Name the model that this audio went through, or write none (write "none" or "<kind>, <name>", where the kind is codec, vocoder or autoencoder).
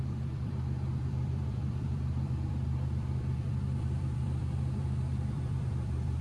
vocoder, BigVGAN v2